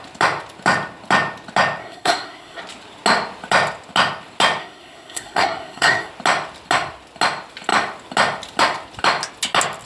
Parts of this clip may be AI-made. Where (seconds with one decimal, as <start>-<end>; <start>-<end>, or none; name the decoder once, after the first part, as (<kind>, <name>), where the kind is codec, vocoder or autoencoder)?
1.8-2.6 (codec, SNAC); 4.6-6.1